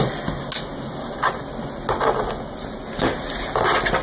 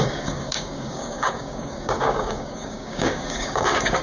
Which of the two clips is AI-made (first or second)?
second